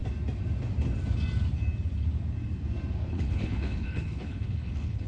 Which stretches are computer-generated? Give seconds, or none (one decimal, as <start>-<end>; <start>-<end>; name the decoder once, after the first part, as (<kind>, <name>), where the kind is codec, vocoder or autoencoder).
3.1-5.1 (codec, HILCodec)